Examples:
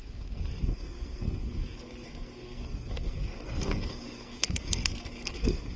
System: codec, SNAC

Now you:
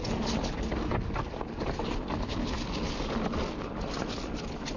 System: none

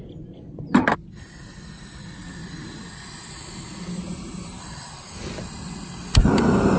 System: none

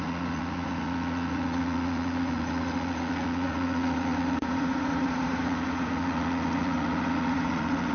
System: vocoder, Vocos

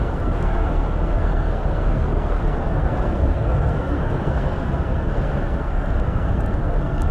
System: codec, SNAC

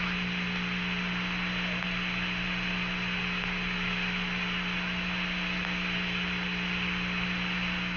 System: none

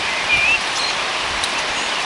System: vocoder, BigVGAN v2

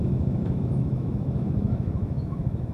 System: autoencoder, DAC-VAE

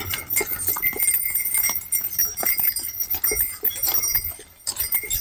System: none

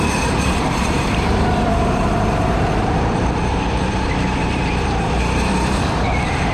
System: vocoder, BigVGAN v2